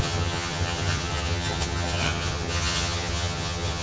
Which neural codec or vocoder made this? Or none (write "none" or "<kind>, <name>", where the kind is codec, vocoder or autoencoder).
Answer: vocoder, HiFi-GAN